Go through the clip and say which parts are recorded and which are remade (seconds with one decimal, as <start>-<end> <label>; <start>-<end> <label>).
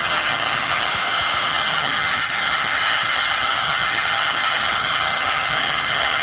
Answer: 0.0-0.9 remade; 0.9-1.5 recorded; 1.5-6.2 remade